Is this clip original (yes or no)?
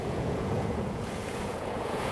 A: no